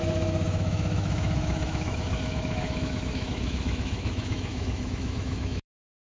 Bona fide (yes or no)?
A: no